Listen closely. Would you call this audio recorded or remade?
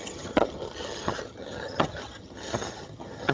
remade